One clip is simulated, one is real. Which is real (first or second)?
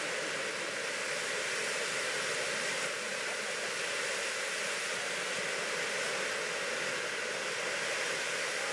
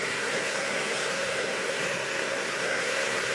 first